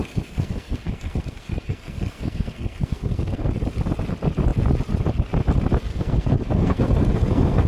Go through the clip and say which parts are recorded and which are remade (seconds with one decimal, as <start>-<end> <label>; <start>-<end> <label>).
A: 0.0-3.5 remade; 3.5-5.9 recorded; 5.9-7.7 remade